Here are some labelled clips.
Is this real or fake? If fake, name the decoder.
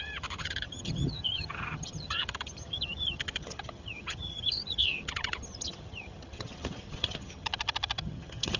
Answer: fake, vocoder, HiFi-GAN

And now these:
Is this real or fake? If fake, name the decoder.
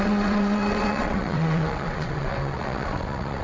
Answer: fake, vocoder, WaveNeXt